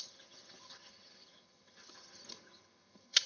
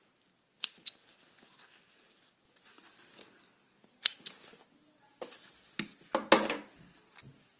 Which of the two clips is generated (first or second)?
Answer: first